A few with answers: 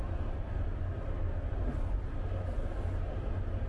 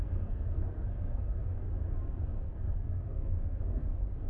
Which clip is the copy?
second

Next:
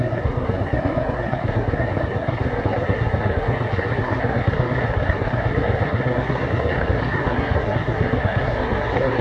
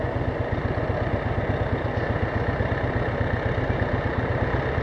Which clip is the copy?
first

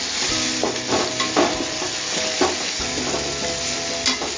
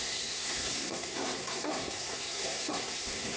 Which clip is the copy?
second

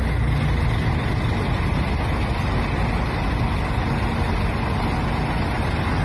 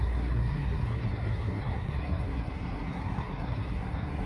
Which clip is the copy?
second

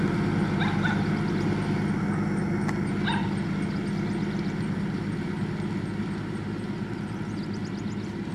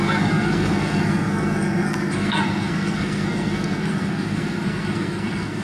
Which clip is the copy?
second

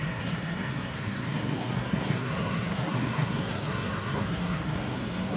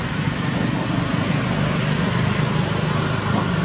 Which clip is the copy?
first